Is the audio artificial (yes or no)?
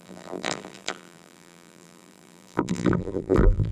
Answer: yes